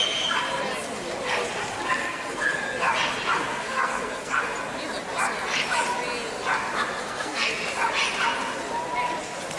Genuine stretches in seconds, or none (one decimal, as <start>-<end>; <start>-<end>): 0.0-2.0; 2.6-3.5; 4.4-7.0; 7.5-9.6